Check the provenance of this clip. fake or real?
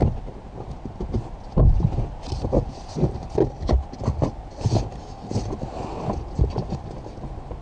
real